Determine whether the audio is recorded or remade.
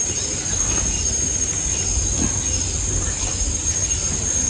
recorded